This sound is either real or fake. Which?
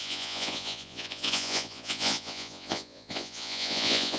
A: fake